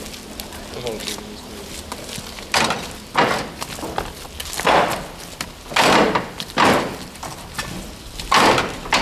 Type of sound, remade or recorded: recorded